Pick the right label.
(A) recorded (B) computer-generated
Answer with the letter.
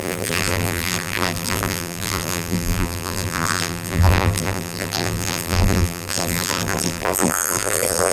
B